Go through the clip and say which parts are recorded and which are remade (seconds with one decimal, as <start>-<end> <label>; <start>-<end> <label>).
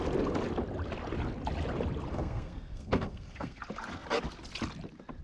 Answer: 0.0-2.1 recorded; 2.1-3.6 remade; 3.6-5.2 recorded